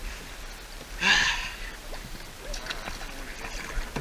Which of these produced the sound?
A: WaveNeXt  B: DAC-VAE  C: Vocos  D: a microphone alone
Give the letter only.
D